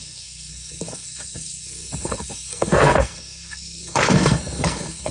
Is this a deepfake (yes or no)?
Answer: yes